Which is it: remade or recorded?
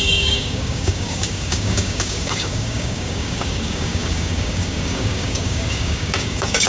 remade